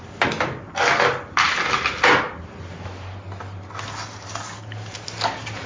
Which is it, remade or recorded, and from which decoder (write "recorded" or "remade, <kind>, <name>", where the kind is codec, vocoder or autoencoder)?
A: recorded